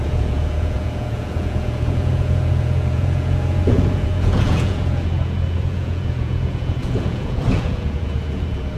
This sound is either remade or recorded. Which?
remade